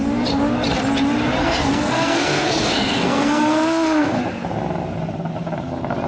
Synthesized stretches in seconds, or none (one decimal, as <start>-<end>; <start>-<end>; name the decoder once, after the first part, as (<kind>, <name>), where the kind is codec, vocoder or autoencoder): 1.4-4.2 (codec, SNAC)